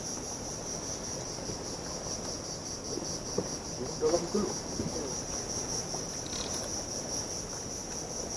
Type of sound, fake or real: real